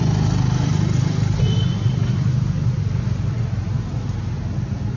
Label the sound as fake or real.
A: real